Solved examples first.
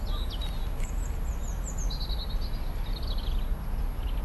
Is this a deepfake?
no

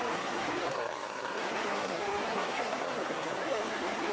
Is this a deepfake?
yes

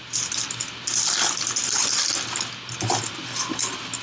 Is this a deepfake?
no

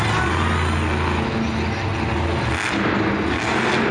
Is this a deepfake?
no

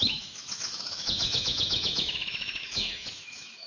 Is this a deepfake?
yes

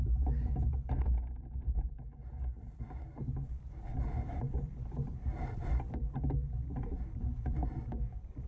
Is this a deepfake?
yes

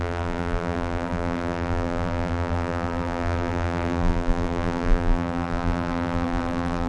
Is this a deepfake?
yes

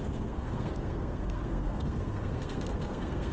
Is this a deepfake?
yes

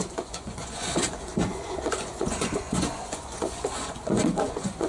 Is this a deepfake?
yes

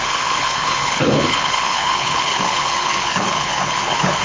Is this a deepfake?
yes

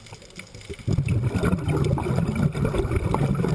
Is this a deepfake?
no